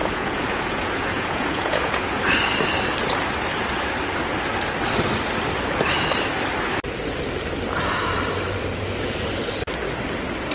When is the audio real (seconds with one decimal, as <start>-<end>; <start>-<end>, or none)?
2.2-10.5

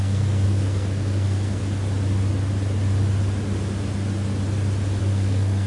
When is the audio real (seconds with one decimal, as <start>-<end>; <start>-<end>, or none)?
1.6-5.0

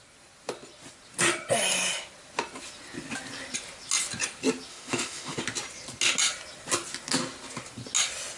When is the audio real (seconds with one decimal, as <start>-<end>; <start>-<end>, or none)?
0.0-4.7; 5.4-8.4